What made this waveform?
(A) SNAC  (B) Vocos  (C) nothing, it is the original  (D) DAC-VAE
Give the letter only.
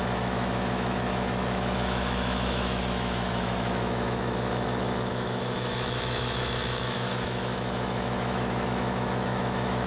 D